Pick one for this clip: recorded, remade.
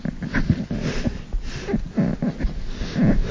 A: recorded